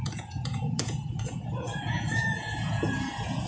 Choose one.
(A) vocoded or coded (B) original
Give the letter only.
A